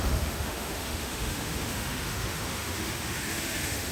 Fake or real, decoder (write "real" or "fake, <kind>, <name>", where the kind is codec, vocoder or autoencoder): fake, autoencoder, DAC-VAE